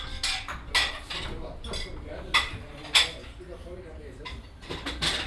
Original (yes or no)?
yes